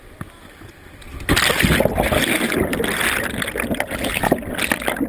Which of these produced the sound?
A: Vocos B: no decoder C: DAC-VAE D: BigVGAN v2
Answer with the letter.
B